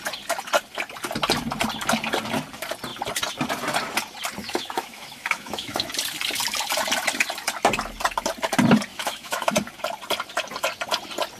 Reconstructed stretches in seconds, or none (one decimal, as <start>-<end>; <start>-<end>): 4.4-5.9; 8.9-9.5